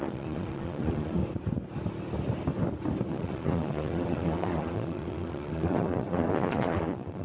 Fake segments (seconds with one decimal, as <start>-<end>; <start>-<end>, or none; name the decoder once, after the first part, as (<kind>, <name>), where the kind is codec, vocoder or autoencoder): 0.0-1.2 (vocoder, Vocos); 3.1-7.2